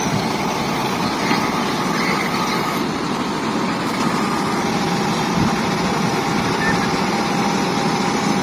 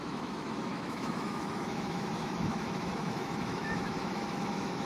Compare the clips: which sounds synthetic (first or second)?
second